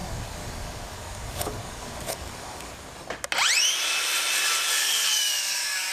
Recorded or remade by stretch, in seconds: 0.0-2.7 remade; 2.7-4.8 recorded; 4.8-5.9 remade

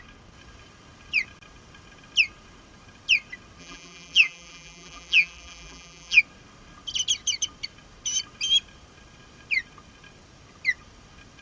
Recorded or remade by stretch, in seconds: 0.0-3.6 recorded; 3.6-6.2 remade; 6.2-11.4 recorded